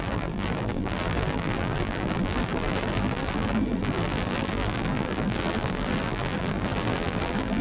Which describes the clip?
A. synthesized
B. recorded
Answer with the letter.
A